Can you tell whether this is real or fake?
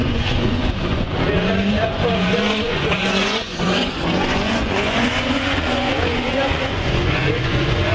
fake